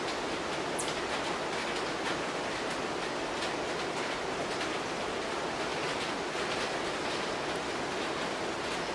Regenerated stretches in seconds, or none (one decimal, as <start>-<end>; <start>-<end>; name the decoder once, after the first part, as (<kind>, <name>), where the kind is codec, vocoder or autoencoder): none